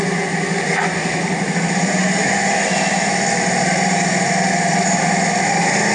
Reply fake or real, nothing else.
real